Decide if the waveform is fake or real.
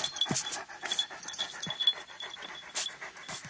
real